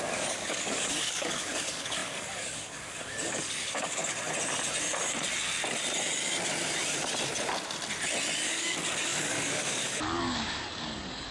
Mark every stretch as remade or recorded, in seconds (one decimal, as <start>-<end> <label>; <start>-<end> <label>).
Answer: 0.0-4.0 remade; 4.0-8.5 recorded; 8.5-11.3 remade